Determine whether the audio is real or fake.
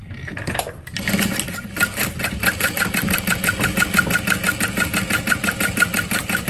real